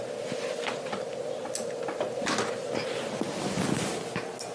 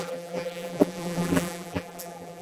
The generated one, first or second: second